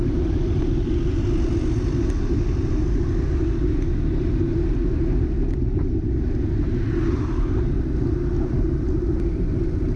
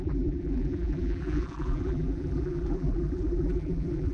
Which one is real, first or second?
first